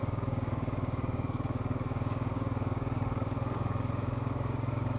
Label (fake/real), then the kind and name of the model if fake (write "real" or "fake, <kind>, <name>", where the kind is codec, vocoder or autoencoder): fake, codec, DAC